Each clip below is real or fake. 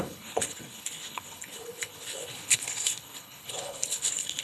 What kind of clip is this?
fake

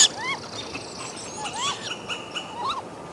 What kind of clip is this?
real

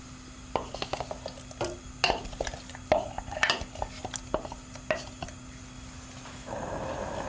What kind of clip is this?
real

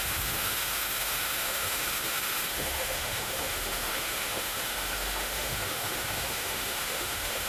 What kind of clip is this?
fake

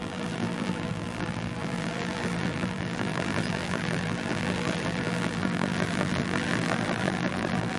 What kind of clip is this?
fake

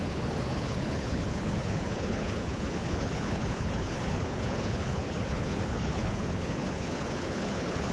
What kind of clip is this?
fake